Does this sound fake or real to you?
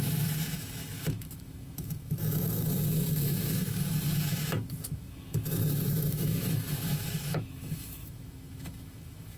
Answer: fake